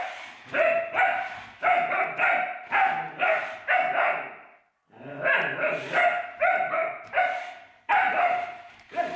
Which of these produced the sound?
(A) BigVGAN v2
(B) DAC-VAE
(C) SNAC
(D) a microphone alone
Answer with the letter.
D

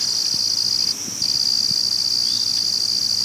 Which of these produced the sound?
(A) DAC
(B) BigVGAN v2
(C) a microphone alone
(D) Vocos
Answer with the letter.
C